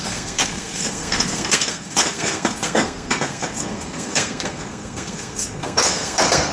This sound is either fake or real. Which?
fake